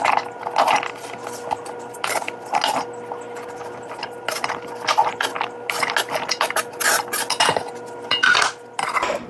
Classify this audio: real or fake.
real